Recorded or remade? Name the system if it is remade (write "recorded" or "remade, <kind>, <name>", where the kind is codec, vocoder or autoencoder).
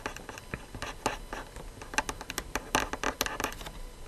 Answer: recorded